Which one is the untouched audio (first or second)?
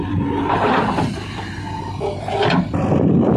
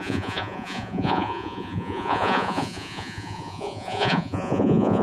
first